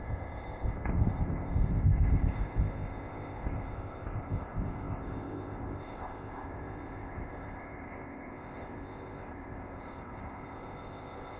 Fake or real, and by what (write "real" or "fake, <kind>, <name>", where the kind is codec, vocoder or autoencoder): fake, codec, ZipCodec